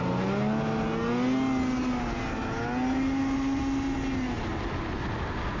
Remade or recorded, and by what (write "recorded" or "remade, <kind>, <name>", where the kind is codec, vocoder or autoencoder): recorded